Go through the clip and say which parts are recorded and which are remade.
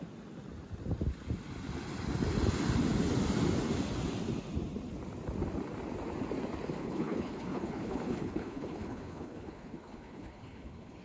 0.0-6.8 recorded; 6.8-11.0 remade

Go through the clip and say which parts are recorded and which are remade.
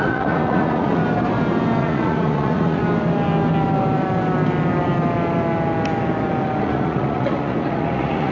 0.0-1.0 remade; 1.0-1.8 recorded; 1.8-2.8 remade; 2.8-6.6 recorded; 6.6-8.3 remade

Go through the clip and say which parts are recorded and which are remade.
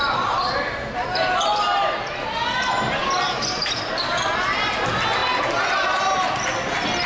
0.0-7.1 recorded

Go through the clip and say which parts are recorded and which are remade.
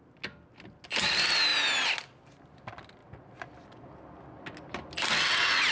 0.0-5.7 recorded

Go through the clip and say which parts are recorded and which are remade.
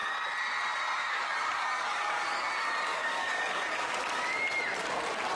0.0-1.0 recorded; 1.0-2.5 remade; 2.5-2.9 recorded; 2.9-3.9 remade; 3.9-5.4 recorded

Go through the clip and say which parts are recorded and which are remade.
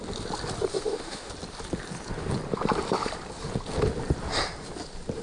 0.0-0.7 recorded; 0.7-1.3 remade; 1.3-5.2 recorded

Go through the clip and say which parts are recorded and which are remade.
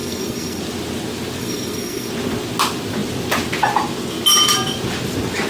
0.0-0.6 remade; 0.6-1.4 recorded; 1.4-2.1 remade; 2.1-5.5 recorded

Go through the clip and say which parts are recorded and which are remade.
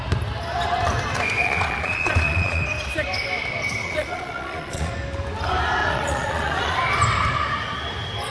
0.0-1.4 recorded; 1.4-2.6 remade; 2.6-3.8 recorded; 3.8-4.9 remade; 4.9-5.8 recorded; 5.8-6.8 remade; 6.8-8.3 recorded